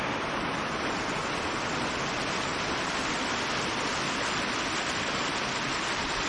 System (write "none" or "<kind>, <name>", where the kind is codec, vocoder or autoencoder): none